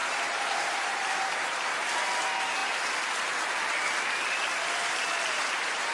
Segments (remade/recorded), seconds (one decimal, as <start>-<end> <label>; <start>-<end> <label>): 0.0-1.9 remade; 1.9-5.9 recorded